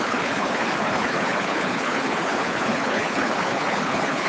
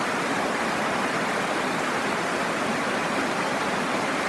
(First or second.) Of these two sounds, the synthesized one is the first